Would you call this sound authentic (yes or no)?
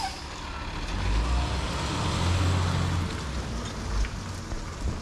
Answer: yes